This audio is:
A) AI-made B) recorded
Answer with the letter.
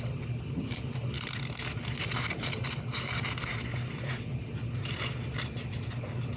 B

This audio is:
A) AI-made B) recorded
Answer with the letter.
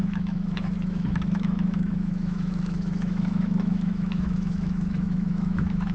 A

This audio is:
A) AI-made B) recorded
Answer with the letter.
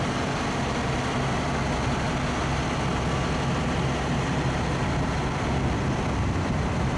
B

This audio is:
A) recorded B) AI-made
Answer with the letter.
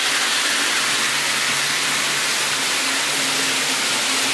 A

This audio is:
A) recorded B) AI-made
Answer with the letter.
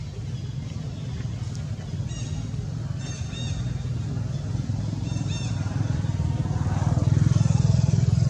A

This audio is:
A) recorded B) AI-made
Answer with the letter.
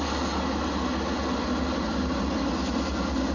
A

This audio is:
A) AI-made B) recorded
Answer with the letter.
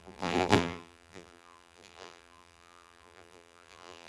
A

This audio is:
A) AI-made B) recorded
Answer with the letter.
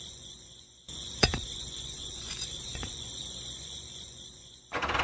A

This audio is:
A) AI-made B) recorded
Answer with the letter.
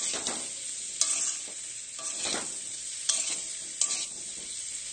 B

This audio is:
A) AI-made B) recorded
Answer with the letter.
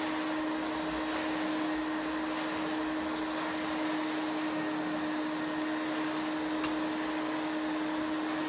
B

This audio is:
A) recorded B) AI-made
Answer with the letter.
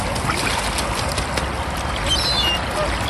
A